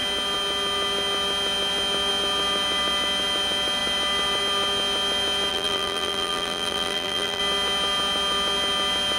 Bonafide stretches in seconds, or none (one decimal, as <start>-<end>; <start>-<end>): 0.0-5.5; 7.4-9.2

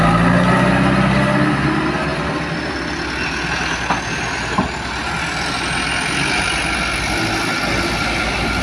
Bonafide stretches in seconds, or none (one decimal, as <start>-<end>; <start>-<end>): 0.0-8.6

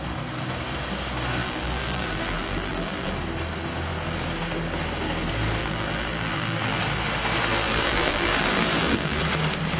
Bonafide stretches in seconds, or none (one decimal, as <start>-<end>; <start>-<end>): 0.0-1.4; 3.1-5.6; 6.8-7.5; 9.2-9.8